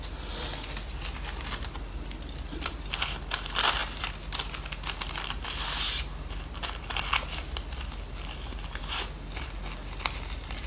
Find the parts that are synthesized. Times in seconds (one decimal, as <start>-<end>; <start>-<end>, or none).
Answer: 2.5-3.1